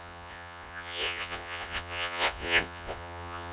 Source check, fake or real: fake